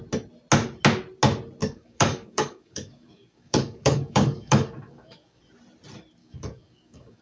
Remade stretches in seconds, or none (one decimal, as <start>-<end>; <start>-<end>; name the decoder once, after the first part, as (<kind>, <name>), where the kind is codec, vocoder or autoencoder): 1.6-5.4 (codec, DAC); 6.2-7.2